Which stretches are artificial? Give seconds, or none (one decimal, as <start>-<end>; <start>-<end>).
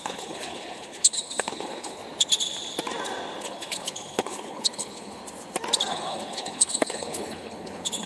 0.0-2.0; 3.4-5.2; 5.9-8.1